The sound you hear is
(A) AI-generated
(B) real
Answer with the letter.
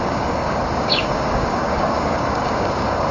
A